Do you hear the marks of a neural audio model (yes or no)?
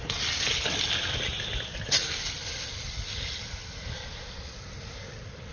no